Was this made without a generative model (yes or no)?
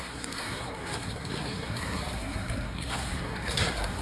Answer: no